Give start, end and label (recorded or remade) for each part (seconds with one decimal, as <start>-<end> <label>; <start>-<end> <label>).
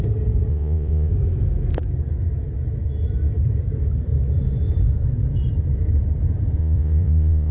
0.0-0.5 recorded; 0.5-1.1 remade; 1.1-6.6 recorded; 6.6-7.5 remade